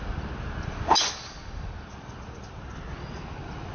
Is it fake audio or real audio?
real